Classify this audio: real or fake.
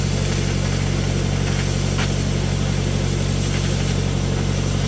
real